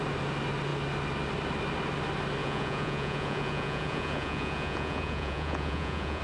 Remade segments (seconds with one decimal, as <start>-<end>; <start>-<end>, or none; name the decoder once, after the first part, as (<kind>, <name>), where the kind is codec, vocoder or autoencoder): 2.4-6.2 (vocoder, Vocos)